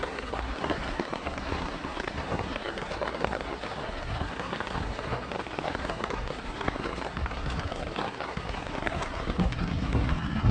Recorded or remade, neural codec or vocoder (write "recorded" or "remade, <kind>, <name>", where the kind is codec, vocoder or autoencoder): remade, codec, SNAC